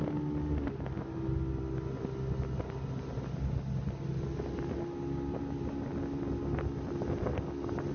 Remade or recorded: recorded